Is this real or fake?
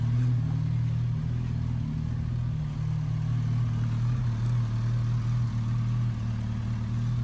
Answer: real